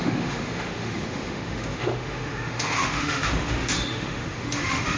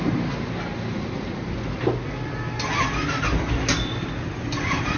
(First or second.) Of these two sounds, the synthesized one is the first